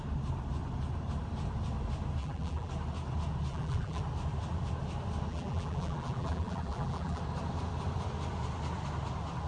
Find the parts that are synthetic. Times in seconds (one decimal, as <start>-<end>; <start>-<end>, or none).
2.2-2.7; 3.5-4.0; 5.3-7.2